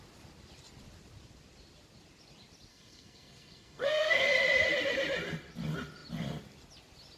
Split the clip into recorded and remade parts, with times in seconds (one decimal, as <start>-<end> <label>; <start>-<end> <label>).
0.0-2.7 recorded; 2.7-4.2 remade; 4.2-7.2 recorded